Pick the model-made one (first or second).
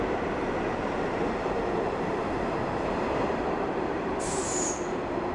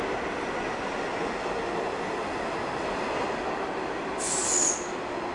first